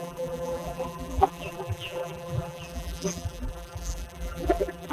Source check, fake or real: fake